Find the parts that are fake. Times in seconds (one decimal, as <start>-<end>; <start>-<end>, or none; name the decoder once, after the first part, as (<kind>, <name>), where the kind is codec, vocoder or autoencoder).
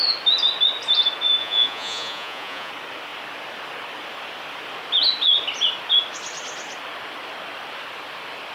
1.4-2.7 (vocoder, Vocos)